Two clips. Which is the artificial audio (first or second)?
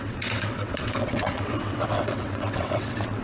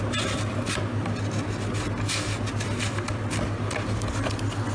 first